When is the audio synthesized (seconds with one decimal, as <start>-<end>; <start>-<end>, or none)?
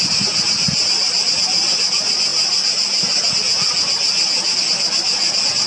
none